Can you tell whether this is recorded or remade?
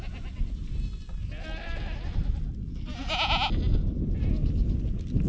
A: recorded